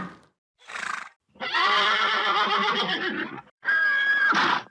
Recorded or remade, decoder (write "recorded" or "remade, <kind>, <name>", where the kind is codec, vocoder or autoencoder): remade, vocoder, BigVGAN v2